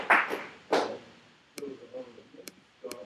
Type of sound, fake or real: fake